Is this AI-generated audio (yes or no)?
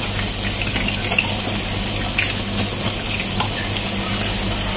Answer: no